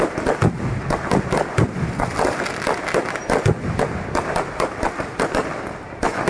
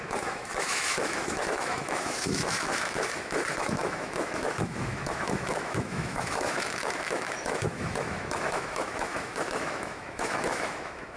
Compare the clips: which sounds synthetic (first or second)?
second